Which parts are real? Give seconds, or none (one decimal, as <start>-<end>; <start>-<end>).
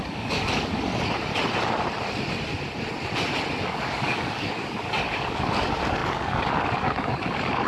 0.9-3.6